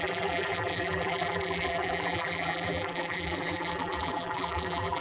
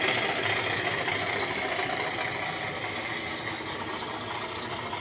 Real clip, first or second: second